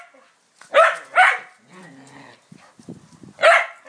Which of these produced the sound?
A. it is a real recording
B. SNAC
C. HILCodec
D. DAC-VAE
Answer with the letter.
A